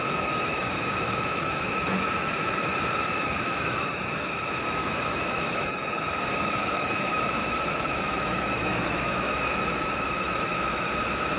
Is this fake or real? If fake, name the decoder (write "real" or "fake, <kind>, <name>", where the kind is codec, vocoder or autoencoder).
fake, autoencoder, DAC-VAE